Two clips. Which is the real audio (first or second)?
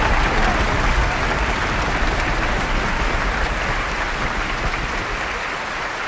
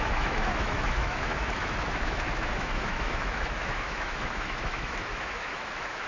first